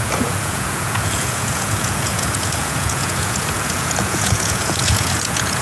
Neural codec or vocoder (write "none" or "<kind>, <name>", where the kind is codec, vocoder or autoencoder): vocoder, Vocos